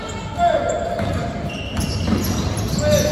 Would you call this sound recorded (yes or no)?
yes